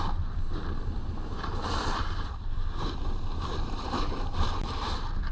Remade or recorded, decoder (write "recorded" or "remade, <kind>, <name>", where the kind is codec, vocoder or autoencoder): recorded